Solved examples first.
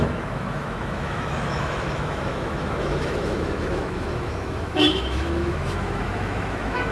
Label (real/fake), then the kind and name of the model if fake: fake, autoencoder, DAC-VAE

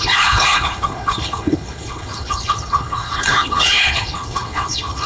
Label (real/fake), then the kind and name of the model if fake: fake, codec, HILCodec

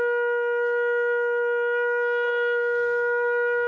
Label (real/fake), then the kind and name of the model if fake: real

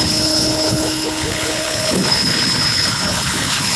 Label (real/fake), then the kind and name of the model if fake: fake, codec, HILCodec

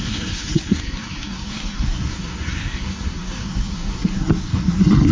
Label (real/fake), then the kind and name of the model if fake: fake, codec, SNAC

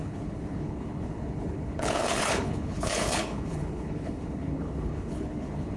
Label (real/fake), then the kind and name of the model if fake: fake, codec, HILCodec